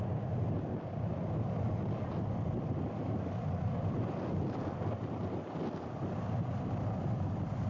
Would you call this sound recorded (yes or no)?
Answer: yes